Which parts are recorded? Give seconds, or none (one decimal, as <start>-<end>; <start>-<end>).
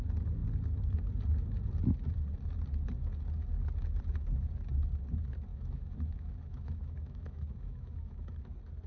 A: 0.0-5.5; 8.4-8.9